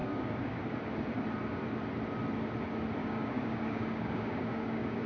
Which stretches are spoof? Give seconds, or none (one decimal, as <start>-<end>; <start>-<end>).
0.0-0.7; 3.0-5.1

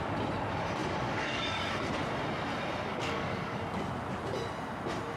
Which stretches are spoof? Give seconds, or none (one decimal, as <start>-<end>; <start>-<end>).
0.8-1.6; 2.9-3.6

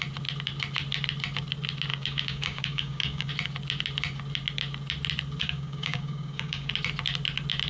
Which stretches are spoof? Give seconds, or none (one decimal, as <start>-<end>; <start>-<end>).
1.9-3.3; 5.4-6.7

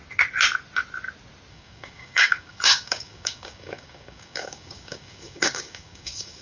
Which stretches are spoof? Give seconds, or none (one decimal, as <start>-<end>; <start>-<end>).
1.5-6.4